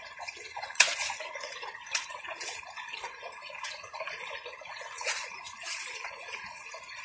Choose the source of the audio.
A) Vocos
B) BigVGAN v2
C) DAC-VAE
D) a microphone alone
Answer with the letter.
A